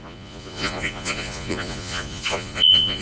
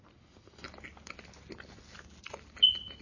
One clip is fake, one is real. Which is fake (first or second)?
first